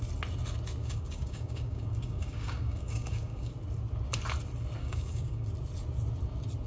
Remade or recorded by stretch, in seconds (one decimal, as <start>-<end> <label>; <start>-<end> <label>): 0.0-0.8 recorded; 0.8-3.5 remade; 3.5-4.8 recorded; 4.8-5.5 remade; 5.5-6.7 recorded